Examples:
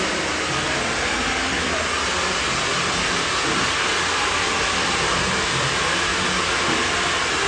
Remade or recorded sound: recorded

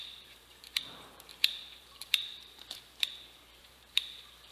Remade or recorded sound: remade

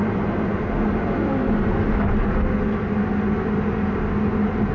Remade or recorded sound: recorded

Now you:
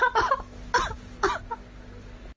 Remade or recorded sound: recorded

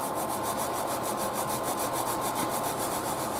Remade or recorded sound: remade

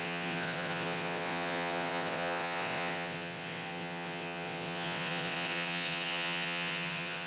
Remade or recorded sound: remade